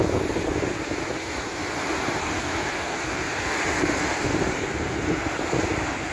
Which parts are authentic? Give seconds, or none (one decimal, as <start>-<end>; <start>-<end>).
none